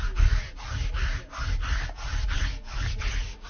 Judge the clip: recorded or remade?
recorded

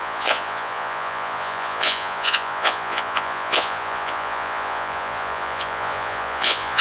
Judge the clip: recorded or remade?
remade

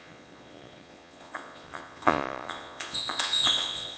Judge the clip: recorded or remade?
remade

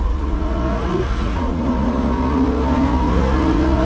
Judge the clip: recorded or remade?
remade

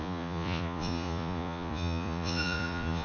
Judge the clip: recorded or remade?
remade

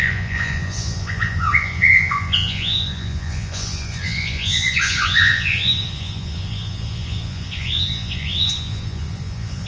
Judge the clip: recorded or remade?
remade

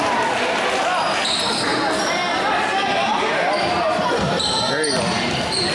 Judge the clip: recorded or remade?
recorded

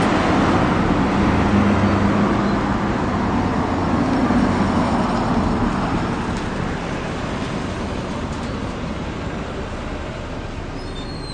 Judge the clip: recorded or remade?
recorded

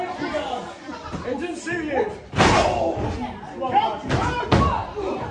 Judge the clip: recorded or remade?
recorded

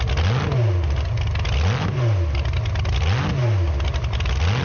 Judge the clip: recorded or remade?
recorded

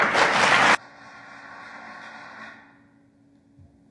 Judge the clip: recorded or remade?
recorded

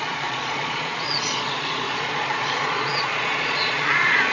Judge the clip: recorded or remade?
remade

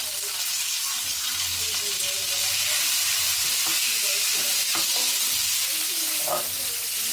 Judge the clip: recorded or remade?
recorded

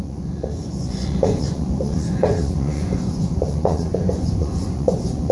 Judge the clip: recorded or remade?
remade